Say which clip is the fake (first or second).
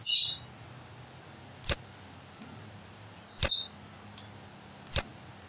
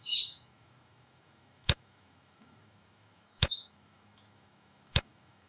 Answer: second